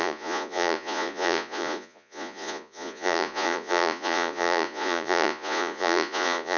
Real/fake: fake